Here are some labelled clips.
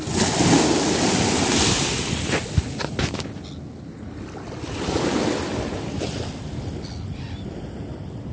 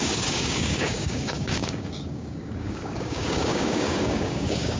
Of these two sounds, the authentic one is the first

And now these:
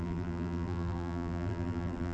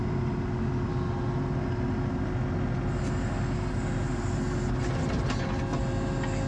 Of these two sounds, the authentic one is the second